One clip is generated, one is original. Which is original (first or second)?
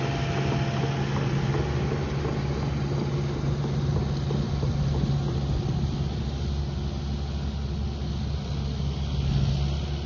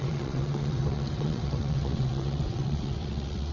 first